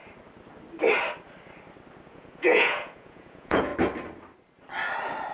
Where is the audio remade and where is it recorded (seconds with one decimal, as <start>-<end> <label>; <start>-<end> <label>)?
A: 0.0-2.1 recorded; 2.1-3.7 remade; 3.7-5.3 recorded